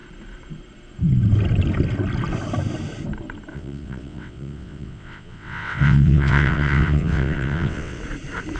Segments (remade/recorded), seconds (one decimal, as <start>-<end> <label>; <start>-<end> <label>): 0.0-3.5 recorded; 3.5-8.0 remade; 8.0-8.6 recorded